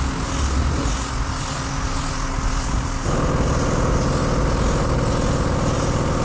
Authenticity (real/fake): real